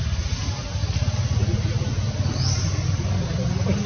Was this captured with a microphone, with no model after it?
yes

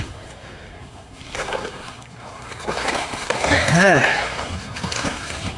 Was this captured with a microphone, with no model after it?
no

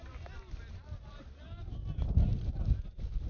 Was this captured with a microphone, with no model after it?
yes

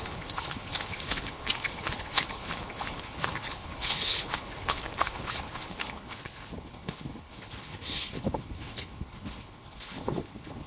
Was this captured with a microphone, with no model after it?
no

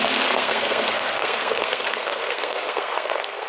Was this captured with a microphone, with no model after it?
no